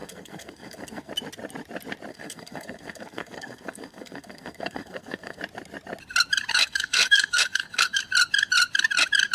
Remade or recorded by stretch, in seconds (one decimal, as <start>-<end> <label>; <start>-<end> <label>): 0.0-1.1 remade; 1.1-2.1 recorded; 2.1-5.4 remade; 5.4-6.5 recorded; 6.5-8.0 remade; 8.0-9.3 recorded